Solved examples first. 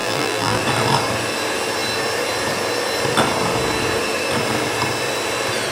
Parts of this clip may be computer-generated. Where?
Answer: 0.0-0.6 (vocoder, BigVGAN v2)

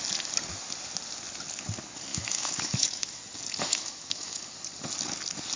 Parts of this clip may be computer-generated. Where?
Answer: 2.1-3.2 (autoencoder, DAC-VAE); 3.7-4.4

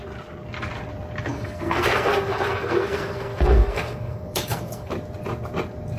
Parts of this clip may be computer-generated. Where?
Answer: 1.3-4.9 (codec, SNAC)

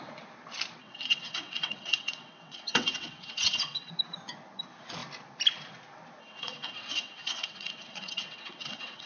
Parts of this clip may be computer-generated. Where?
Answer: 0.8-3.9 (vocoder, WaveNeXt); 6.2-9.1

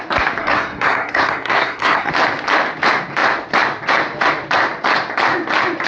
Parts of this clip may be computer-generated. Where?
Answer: 0.4-2.1 (codec, SNAC)